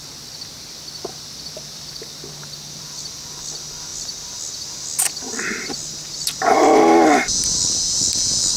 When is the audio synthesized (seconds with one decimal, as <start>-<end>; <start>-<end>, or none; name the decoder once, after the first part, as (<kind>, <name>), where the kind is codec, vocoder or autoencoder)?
none